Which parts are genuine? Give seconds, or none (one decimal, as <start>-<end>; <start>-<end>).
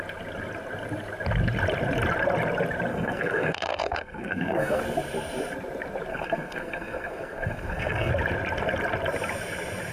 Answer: 0.0-2.9; 4.8-6.1; 8.1-9.9